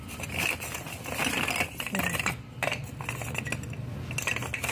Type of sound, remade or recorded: recorded